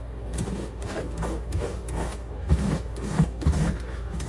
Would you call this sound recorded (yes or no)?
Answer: no